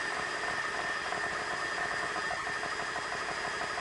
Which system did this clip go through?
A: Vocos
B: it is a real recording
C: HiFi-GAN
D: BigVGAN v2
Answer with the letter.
B